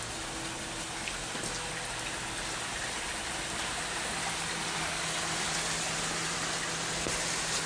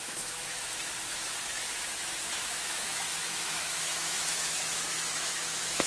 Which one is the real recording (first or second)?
first